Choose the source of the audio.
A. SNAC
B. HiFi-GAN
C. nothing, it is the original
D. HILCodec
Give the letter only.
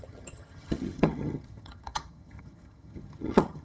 B